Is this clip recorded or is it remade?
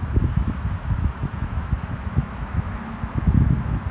remade